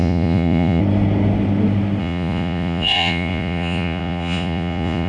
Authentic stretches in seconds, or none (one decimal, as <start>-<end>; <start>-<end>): 0.8-2.0